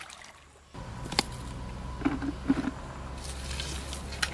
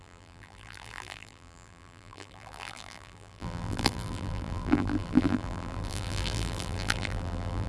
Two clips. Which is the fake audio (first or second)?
second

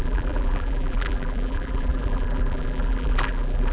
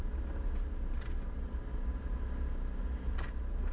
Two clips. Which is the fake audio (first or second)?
first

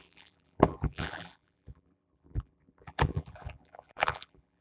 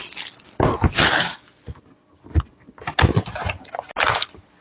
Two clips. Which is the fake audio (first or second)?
first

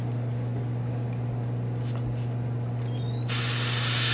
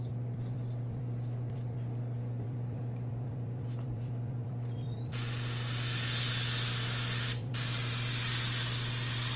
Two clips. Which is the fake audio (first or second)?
second